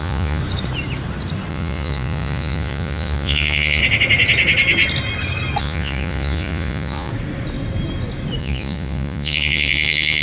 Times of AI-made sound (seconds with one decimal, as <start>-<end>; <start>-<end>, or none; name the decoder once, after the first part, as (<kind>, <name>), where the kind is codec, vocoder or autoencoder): 0.0-0.4 (vocoder, Vocos); 1.5-3.8; 5.6-7.1; 8.4-10.2